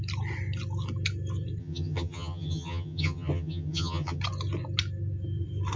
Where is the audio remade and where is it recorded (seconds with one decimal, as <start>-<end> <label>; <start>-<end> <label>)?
0.0-1.6 recorded; 1.6-4.2 remade; 4.2-5.8 recorded